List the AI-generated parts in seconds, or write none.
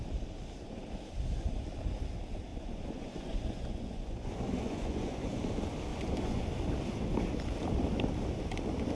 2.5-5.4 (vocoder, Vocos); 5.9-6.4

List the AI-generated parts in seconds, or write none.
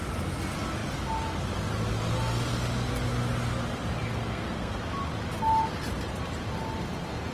4.2-4.8 (codec, SNAC)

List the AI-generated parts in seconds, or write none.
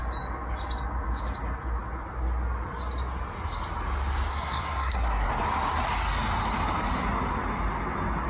4.3-5.3 (codec, SNAC)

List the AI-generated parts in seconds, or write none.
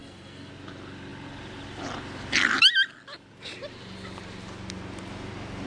0.0-0.5 (codec, SNAC)